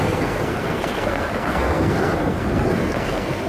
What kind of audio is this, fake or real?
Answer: fake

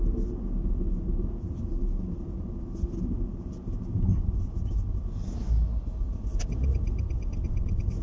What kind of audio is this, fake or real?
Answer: real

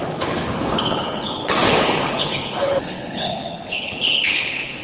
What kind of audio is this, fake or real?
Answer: fake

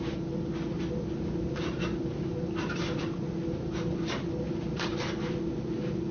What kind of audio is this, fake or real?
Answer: real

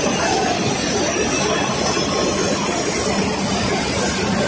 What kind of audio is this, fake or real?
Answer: real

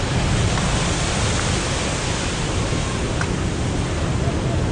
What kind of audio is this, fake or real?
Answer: real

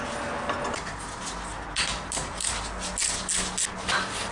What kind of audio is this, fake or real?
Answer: real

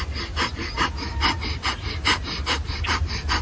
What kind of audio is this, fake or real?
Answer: real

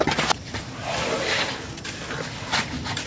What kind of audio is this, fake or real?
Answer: real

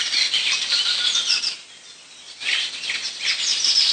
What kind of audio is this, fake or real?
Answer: real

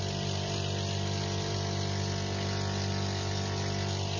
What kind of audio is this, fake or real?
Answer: real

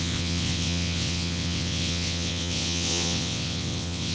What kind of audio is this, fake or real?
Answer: fake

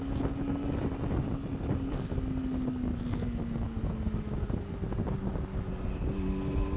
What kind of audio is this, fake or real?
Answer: real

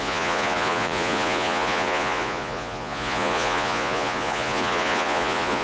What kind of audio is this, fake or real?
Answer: fake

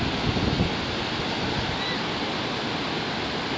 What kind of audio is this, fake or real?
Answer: real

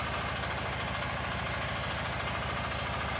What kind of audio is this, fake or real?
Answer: real